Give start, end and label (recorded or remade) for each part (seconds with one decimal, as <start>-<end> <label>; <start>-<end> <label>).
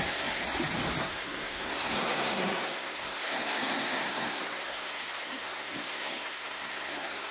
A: 0.0-0.4 remade; 0.4-1.0 recorded; 1.0-7.3 remade